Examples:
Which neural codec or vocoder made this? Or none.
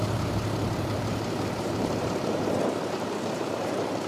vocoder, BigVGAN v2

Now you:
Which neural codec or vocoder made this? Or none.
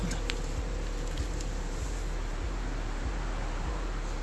none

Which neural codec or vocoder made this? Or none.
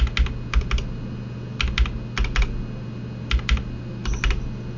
none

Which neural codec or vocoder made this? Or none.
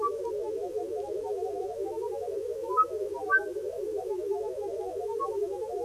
autoencoder, DAC-VAE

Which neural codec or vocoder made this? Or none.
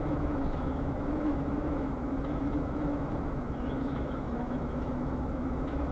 autoencoder, DAC-VAE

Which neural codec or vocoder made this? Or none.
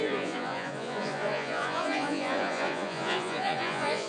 vocoder, Vocos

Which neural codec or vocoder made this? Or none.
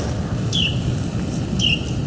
none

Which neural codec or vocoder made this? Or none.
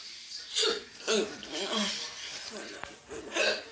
none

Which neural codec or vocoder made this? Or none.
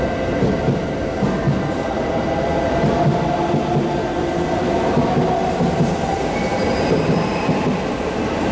none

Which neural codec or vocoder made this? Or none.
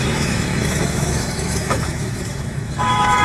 autoencoder, DAC-VAE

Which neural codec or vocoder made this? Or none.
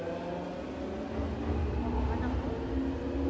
none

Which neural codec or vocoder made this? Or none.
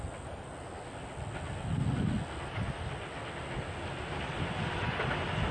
none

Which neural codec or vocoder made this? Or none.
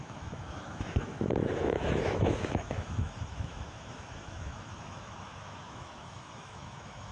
autoencoder, DAC-VAE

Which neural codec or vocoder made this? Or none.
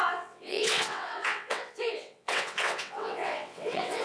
vocoder, WaveNeXt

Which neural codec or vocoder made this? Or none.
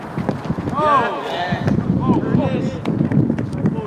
none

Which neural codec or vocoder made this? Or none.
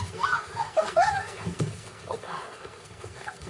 codec, SNAC